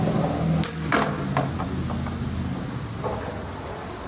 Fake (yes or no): no